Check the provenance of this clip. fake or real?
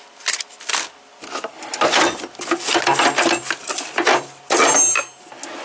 real